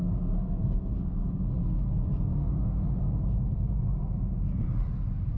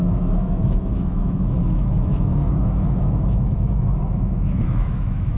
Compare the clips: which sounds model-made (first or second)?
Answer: second